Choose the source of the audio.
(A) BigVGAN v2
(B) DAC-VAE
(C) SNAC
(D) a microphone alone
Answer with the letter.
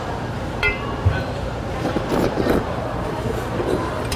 A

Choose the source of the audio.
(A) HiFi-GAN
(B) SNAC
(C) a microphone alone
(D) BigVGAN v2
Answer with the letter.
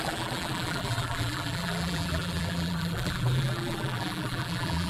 D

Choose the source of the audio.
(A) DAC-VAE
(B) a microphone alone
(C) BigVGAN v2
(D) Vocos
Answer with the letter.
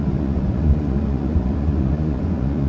D